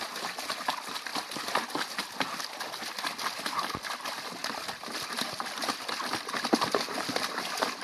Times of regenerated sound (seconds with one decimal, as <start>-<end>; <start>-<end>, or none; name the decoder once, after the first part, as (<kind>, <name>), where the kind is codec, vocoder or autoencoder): none